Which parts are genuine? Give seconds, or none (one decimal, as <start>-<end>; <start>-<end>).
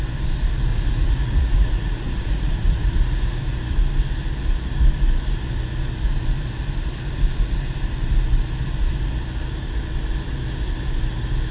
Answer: 0.0-0.7; 3.4-11.5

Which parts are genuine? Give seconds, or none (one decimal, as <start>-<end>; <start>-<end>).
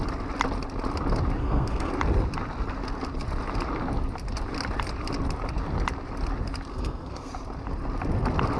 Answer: 0.0-1.4; 1.9-6.7; 7.3-8.6